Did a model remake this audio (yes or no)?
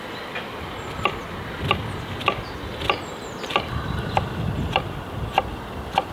no